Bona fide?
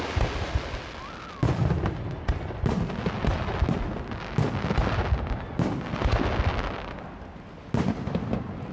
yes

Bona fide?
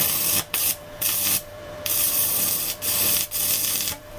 no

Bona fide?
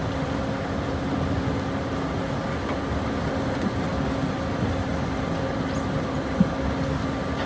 yes